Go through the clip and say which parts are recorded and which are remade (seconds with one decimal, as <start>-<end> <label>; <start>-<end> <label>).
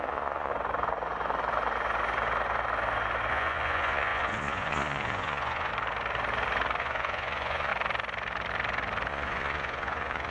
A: 0.0-0.5 remade; 0.5-3.3 recorded; 3.3-5.7 remade; 5.7-6.8 recorded; 6.8-7.7 remade; 7.7-9.1 recorded; 9.1-10.3 remade